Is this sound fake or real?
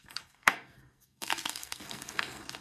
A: fake